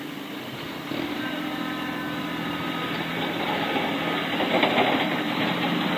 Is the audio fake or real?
real